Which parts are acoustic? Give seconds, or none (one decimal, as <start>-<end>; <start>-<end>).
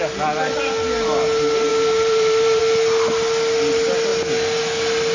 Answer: 0.0-1.7; 2.6-5.1